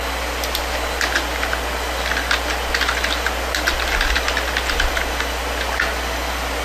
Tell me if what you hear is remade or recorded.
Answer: recorded